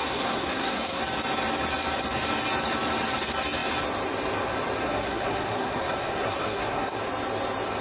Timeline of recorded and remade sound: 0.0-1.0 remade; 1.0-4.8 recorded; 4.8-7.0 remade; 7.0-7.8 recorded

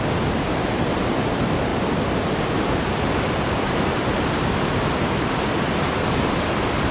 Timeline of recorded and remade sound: 0.0-6.9 recorded

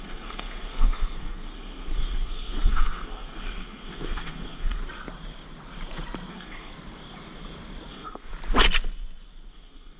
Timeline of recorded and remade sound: 0.0-4.8 remade; 4.8-6.3 recorded; 6.3-6.7 remade; 6.7-7.9 recorded; 7.9-8.3 remade; 8.3-9.5 recorded; 9.5-10.0 remade

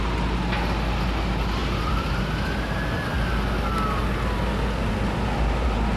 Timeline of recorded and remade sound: 0.0-6.0 recorded

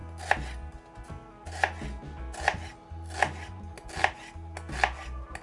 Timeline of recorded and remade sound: 0.0-5.4 recorded

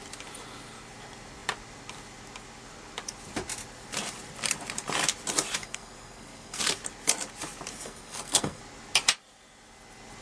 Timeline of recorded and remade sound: 0.0-5.6 recorded; 5.6-6.6 remade; 6.6-7.7 recorded; 7.7-8.6 remade; 8.6-10.2 recorded